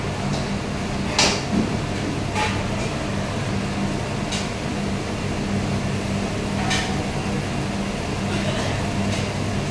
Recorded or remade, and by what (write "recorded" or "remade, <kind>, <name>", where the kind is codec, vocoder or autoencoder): recorded